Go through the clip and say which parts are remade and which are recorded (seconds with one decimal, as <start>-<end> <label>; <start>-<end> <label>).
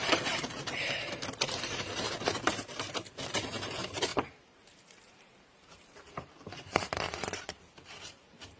0.0-8.6 remade